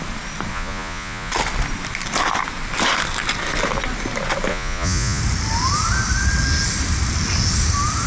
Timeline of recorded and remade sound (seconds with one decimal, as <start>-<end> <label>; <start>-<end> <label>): 0.0-0.5 recorded; 0.5-1.3 remade; 1.3-4.5 recorded; 4.5-5.2 remade; 5.2-8.1 recorded